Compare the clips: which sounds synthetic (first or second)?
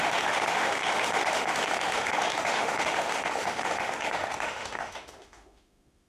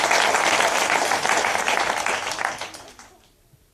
first